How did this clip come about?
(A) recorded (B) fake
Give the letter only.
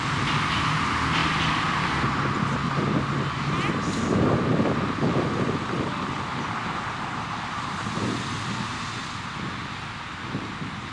A